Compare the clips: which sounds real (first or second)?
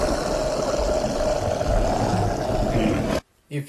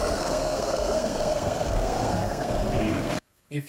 first